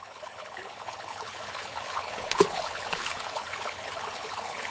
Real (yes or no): no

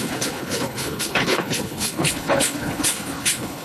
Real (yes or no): no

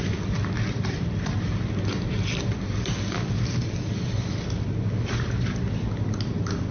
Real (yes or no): yes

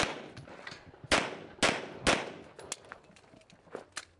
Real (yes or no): yes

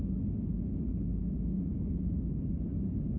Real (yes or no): yes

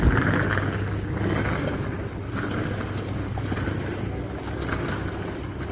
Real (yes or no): yes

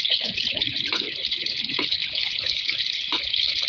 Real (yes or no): no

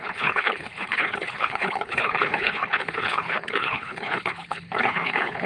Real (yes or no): no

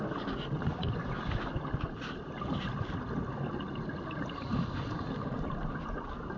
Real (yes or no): yes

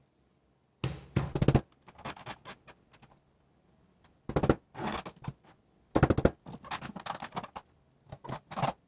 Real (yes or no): yes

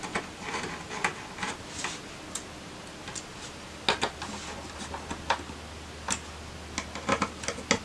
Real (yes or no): yes